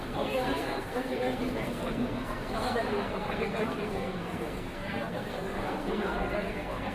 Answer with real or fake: fake